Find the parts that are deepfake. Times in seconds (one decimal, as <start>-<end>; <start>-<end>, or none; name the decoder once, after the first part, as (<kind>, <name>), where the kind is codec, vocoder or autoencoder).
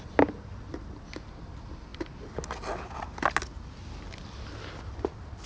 none